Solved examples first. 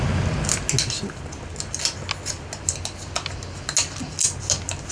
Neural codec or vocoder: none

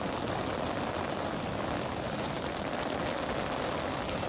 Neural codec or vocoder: none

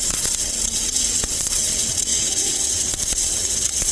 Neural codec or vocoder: vocoder, WaveNeXt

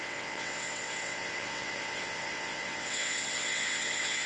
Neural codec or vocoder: vocoder, WaveNeXt